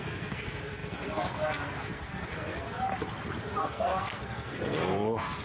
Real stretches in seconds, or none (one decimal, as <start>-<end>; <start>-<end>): 2.9-3.4